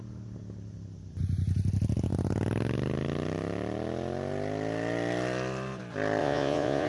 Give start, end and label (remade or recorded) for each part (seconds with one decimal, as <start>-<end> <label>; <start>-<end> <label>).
0.0-6.2 recorded; 6.2-6.9 remade